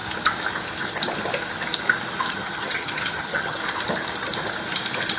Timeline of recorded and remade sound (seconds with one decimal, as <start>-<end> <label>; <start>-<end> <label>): 0.0-2.3 recorded; 2.3-3.6 remade; 3.6-5.2 recorded